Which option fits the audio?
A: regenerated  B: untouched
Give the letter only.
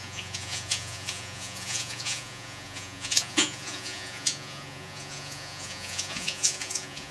A